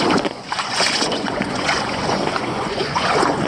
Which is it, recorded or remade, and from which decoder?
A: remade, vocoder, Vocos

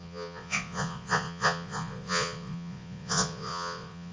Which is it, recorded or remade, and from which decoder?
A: remade, vocoder, Vocos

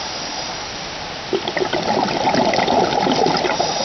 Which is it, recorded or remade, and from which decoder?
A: recorded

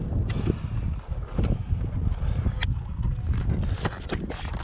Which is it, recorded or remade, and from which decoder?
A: recorded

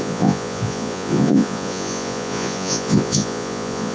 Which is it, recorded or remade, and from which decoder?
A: remade, vocoder, Vocos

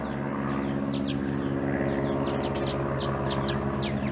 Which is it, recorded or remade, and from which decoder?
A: recorded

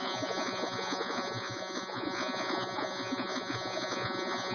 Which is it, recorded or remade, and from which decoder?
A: remade, vocoder, Vocos